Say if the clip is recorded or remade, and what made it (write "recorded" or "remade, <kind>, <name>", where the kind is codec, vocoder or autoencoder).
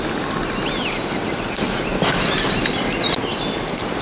recorded